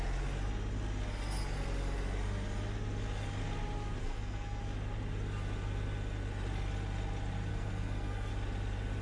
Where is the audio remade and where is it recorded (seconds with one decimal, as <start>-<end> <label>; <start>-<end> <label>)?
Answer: 0.0-4.0 recorded; 4.0-4.6 remade; 4.6-7.5 recorded; 7.5-8.3 remade; 8.3-9.0 recorded